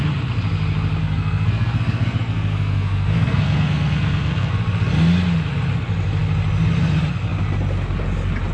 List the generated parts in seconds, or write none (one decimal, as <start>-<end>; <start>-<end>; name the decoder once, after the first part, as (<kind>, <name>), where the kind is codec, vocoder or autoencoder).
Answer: 1.0-4.5 (codec, SNAC)